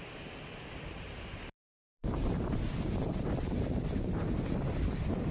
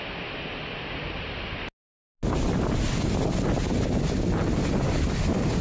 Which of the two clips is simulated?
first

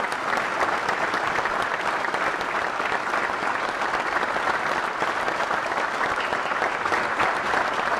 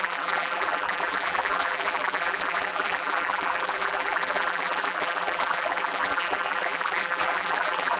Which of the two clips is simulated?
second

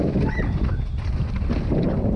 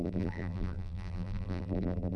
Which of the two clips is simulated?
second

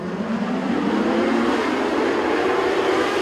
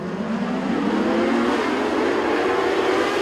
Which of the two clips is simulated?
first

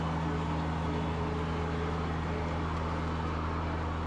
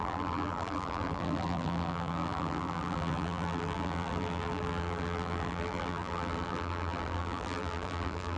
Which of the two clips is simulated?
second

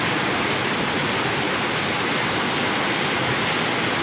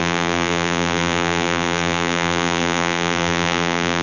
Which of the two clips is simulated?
second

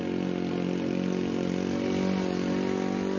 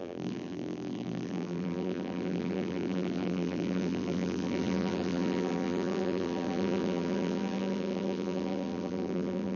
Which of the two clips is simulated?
second